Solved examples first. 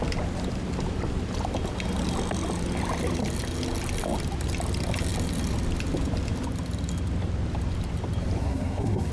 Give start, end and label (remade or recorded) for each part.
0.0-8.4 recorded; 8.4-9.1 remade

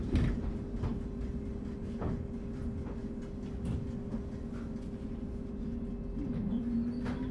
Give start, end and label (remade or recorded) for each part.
0.0-7.3 recorded

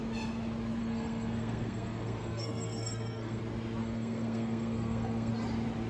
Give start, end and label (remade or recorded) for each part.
0.0-0.8 recorded; 0.8-3.4 remade; 3.4-3.8 recorded; 3.8-5.3 remade; 5.3-5.9 recorded

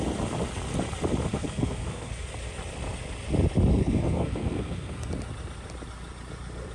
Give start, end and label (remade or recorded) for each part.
0.0-1.3 recorded; 1.3-2.1 remade; 2.1-3.7 recorded; 3.7-5.1 remade; 5.1-6.7 recorded

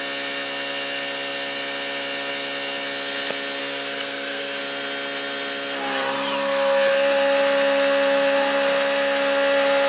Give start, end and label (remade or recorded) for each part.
0.0-3.6 recorded; 3.6-4.6 remade; 4.6-9.9 recorded